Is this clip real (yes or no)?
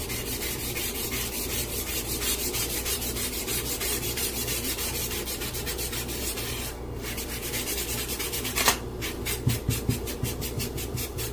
no